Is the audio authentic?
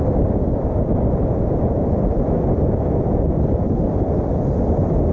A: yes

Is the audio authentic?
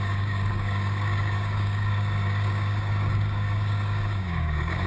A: no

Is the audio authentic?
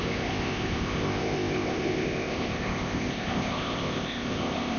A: no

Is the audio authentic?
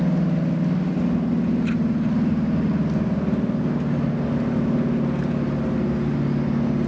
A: yes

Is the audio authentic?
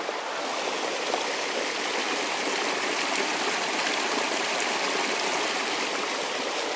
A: yes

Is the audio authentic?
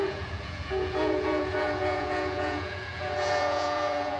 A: no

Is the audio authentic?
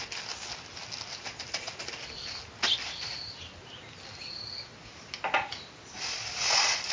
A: yes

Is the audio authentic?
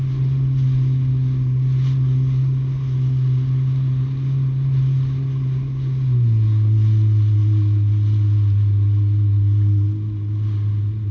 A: yes